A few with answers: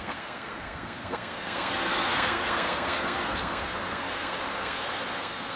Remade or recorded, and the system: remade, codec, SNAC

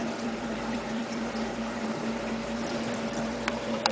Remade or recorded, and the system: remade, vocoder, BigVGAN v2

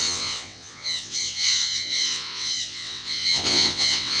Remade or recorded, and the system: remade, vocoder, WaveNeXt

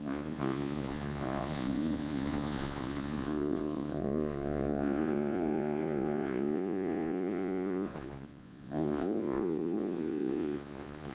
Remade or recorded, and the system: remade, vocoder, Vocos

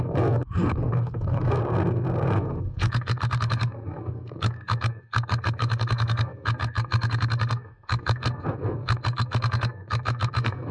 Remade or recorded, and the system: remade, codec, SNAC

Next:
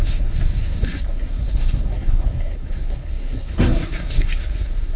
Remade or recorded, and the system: remade, codec, SNAC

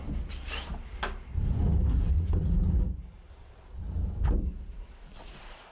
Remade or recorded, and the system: recorded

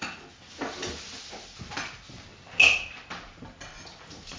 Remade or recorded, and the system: recorded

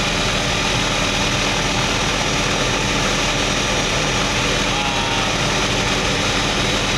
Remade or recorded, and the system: recorded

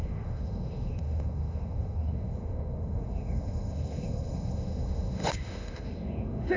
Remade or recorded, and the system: remade, autoencoder, DAC-VAE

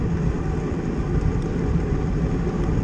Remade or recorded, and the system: recorded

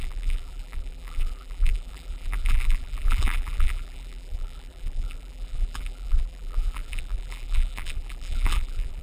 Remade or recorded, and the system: remade, vocoder, BigVGAN v2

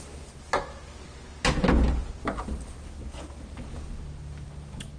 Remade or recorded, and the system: recorded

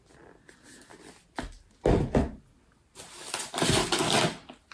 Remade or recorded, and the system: recorded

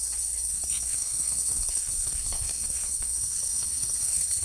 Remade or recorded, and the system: remade, codec, SNAC